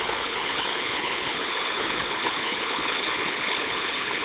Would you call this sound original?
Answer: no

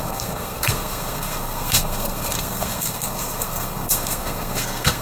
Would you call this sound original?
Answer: no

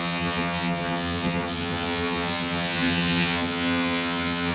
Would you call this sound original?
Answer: no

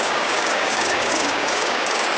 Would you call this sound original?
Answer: no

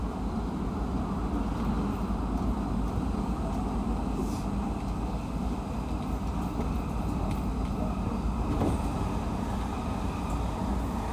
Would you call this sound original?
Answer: yes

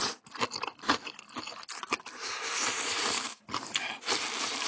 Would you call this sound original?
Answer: yes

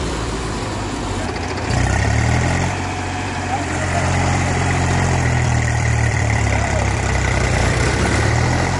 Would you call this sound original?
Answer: no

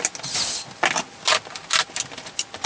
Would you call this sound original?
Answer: yes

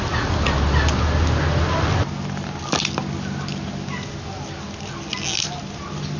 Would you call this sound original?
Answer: yes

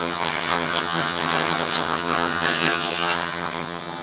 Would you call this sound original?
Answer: no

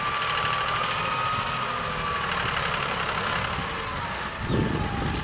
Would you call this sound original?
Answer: yes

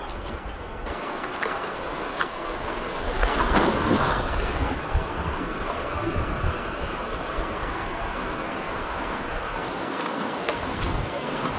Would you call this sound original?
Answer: no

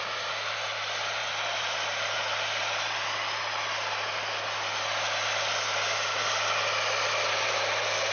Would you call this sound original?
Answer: yes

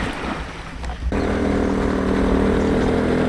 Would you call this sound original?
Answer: yes